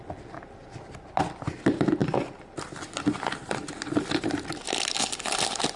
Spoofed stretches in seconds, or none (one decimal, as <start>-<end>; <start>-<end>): none